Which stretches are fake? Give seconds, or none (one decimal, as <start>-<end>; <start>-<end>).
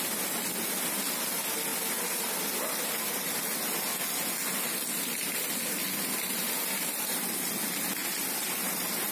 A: none